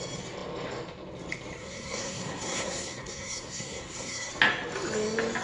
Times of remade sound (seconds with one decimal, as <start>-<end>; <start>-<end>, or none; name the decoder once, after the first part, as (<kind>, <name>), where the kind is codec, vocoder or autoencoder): 1.6-4.3 (codec, SNAC)